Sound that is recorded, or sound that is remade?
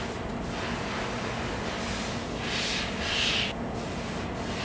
recorded